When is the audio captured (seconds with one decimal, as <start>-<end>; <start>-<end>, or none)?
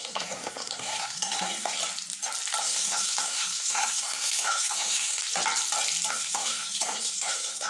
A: 1.8-2.6; 5.2-6.1